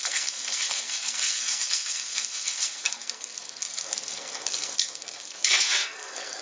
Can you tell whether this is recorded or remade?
remade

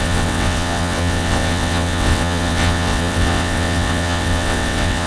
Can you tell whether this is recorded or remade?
remade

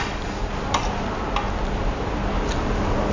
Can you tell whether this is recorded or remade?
recorded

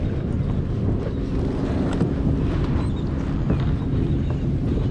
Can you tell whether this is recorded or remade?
recorded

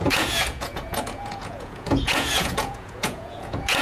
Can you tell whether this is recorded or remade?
remade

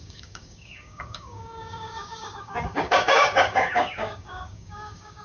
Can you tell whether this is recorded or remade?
remade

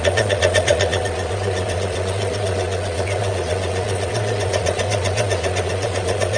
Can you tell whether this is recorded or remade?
remade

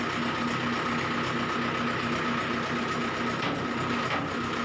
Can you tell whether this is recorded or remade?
recorded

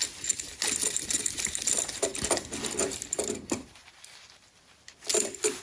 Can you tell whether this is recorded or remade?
recorded